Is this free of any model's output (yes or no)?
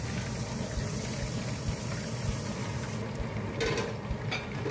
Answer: yes